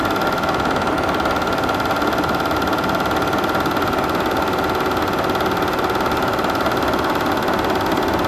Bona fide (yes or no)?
yes